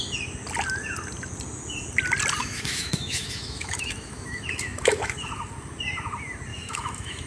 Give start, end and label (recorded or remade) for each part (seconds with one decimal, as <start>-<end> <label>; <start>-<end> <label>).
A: 0.0-2.4 recorded; 2.4-5.3 remade; 5.3-6.5 recorded; 6.5-7.3 remade